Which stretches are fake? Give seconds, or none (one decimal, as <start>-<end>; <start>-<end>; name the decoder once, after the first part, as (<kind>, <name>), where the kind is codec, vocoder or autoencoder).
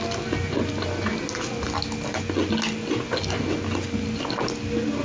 none